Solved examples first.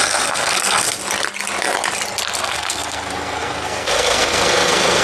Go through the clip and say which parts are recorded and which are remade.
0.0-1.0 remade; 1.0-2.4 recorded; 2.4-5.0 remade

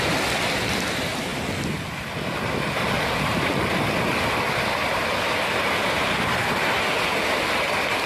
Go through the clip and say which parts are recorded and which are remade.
0.0-8.1 recorded

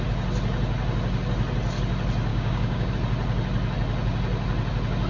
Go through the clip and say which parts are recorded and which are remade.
0.0-2.3 recorded; 2.3-2.9 remade; 2.9-5.1 recorded

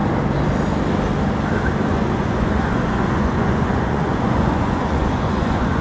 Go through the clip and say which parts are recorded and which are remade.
0.0-1.9 recorded; 1.9-5.8 remade

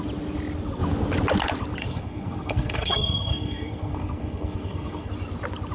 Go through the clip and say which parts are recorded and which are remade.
0.0-1.8 recorded; 1.8-5.1 remade; 5.1-5.7 recorded